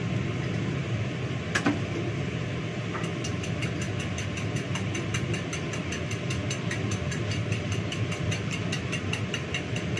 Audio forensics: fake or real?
real